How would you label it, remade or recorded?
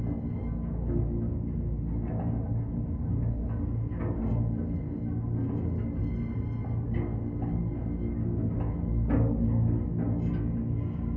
recorded